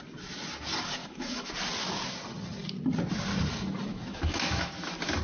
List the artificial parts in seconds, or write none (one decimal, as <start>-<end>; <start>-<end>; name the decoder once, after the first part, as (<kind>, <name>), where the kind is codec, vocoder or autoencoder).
1.0-1.5 (autoencoder, DAC-VAE); 3.9-4.7